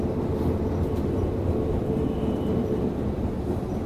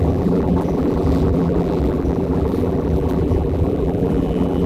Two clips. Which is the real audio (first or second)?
first